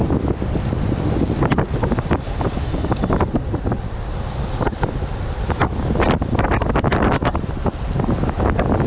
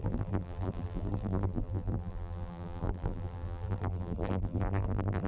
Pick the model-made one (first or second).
second